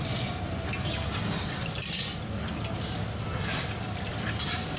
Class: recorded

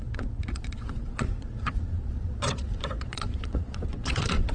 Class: remade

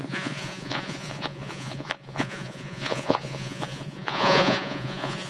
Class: remade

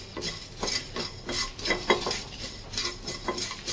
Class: recorded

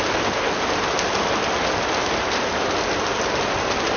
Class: recorded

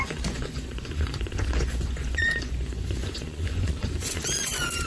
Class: remade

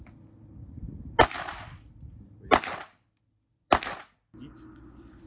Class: recorded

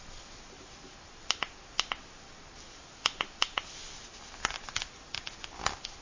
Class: recorded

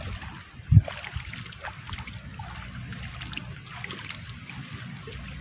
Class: recorded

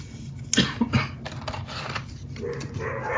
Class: recorded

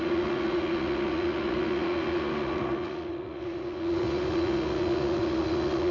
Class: remade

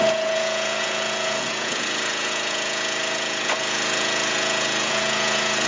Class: remade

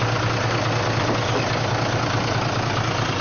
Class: recorded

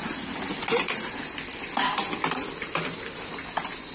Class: recorded